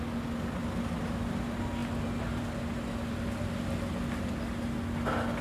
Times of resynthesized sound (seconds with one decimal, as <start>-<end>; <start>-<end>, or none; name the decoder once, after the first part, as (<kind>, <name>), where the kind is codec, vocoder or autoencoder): none